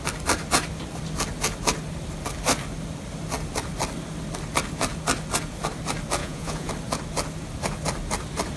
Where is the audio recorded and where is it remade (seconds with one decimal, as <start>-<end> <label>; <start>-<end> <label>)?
0.0-6.2 recorded; 6.2-6.7 remade; 6.7-8.6 recorded